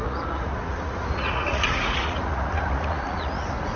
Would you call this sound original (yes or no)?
no